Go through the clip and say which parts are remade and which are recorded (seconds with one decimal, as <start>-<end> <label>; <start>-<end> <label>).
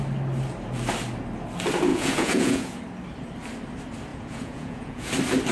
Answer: 0.0-1.9 recorded; 1.9-2.8 remade; 2.8-4.1 recorded; 4.1-5.1 remade; 5.1-5.5 recorded